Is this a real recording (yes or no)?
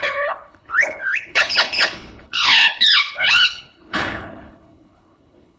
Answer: no